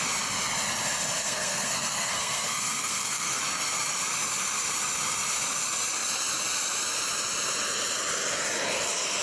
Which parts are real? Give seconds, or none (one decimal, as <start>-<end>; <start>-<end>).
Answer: 0.0-1.2; 3.4-9.2